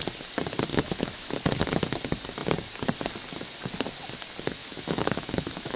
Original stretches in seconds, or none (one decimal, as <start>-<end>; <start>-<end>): 0.0-0.7; 1.3-4.6